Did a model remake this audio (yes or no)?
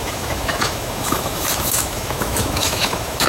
yes